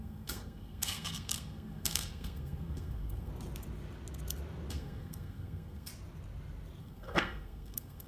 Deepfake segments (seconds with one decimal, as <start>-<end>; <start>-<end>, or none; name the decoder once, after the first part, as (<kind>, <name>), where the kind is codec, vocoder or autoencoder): 0.0-3.3 (codec, SNAC); 4.7-5.9; 6.8-8.1

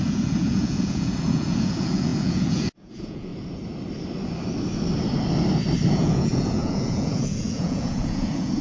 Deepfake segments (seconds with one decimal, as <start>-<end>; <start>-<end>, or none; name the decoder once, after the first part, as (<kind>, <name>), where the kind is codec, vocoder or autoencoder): 0.0-3.3 (vocoder, Vocos); 5.9-8.6

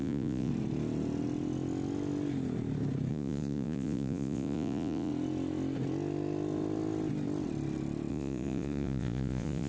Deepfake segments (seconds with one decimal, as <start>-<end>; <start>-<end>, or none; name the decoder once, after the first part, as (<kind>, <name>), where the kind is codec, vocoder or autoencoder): 0.0-0.5 (vocoder, Vocos); 3.1-5.1; 8.1-9.7

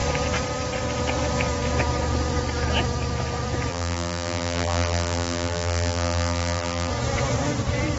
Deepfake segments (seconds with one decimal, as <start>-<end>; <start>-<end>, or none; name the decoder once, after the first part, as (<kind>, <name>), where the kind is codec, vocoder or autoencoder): 3.7-6.9 (vocoder, BigVGAN v2)

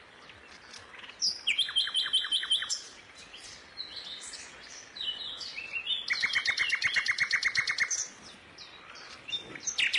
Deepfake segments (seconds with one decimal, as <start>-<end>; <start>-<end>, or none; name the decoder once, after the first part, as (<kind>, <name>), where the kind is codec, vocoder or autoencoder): 1.3-3.2 (vocoder, BigVGAN v2)

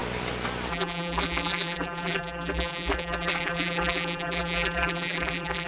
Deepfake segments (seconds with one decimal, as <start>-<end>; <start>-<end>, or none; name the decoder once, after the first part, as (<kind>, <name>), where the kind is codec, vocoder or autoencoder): 0.7-5.7 (vocoder, BigVGAN v2)

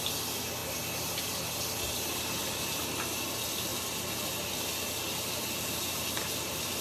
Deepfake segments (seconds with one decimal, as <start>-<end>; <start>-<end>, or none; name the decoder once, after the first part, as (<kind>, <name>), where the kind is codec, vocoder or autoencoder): none